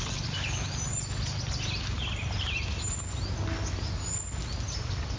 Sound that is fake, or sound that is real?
real